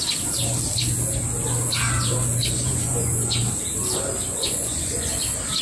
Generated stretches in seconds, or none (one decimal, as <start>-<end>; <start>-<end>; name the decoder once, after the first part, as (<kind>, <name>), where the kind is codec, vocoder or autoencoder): 2.6-3.4 (vocoder, Vocos); 4.3-5.1